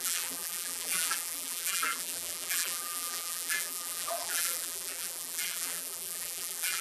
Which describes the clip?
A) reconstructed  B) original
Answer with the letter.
A